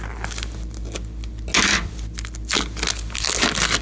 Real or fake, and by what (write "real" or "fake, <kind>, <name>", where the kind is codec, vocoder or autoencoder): real